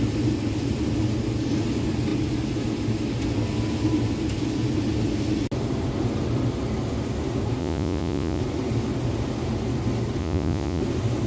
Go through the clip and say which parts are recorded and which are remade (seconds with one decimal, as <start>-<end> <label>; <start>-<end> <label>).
0.0-7.6 recorded; 7.6-8.4 remade; 8.4-10.2 recorded; 10.2-10.8 remade; 10.8-11.3 recorded